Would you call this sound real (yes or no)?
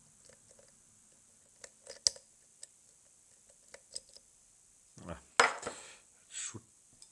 yes